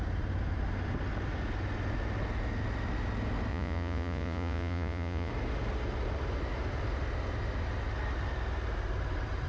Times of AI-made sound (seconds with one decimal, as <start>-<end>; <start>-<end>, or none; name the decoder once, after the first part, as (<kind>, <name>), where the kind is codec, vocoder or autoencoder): 3.5-5.3 (vocoder, Vocos)